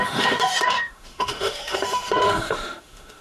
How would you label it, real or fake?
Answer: fake